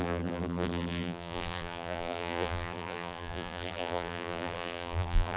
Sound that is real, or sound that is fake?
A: fake